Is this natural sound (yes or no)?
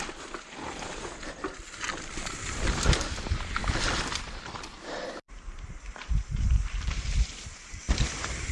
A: no